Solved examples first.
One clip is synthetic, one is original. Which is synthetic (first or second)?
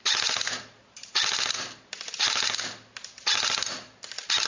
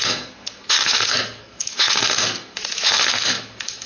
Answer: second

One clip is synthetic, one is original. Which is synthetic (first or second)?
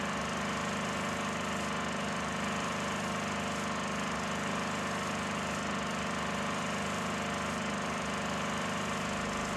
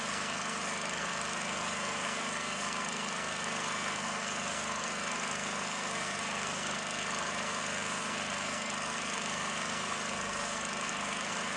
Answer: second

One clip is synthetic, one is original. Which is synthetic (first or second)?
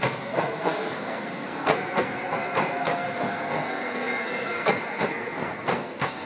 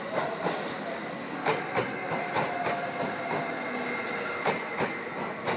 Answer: first